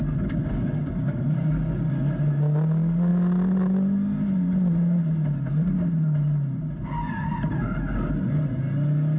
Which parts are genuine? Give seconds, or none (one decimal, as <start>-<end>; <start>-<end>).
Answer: 0.0-9.2